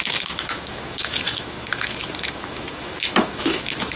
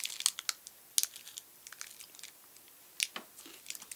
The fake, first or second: first